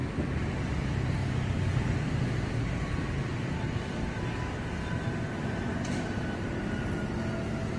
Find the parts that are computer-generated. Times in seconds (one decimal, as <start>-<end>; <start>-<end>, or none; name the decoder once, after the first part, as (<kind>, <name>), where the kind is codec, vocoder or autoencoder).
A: none

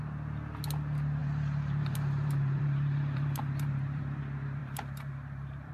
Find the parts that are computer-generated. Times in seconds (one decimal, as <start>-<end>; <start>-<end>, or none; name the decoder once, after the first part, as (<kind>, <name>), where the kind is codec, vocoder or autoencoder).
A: 1.2-4.0 (vocoder, BigVGAN v2); 4.6-5.7

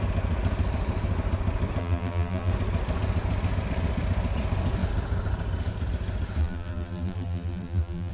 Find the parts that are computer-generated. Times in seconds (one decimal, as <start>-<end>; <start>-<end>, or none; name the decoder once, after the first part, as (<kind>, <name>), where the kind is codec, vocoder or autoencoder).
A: 1.8-2.5 (vocoder, BigVGAN v2); 6.4-8.1

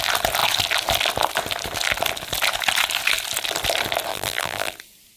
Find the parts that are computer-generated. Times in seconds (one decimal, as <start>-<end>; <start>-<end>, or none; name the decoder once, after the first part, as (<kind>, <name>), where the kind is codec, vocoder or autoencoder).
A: 4.1-4.7 (vocoder, BigVGAN v2)

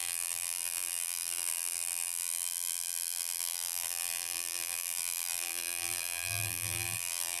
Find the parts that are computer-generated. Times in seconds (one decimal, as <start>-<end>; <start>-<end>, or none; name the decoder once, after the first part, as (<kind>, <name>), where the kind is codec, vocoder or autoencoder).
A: 0.0-7.4 (vocoder, BigVGAN v2)